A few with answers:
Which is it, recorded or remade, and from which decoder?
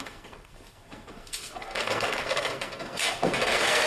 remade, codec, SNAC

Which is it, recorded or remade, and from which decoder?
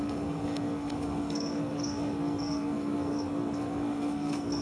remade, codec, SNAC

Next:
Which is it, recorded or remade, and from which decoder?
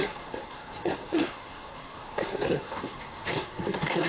remade, codec, SNAC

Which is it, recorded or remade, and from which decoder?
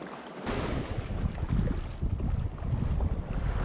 recorded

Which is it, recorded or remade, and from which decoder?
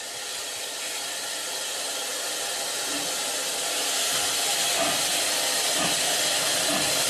recorded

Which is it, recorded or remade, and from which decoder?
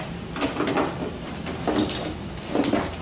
recorded